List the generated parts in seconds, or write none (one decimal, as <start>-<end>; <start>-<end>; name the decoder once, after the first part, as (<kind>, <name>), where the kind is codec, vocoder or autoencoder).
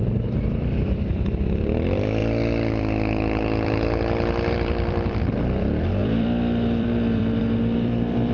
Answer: 0.0-2.2 (vocoder, BigVGAN v2); 4.5-8.3